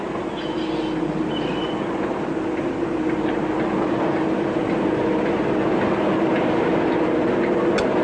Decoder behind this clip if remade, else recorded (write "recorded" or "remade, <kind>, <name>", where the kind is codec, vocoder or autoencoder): recorded